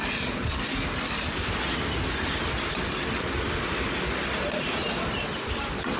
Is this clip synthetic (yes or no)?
no